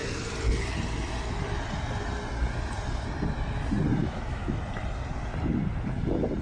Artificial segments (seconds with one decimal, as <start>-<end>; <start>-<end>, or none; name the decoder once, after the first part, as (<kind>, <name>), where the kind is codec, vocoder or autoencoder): 4.0-4.6 (autoencoder, DAC-VAE)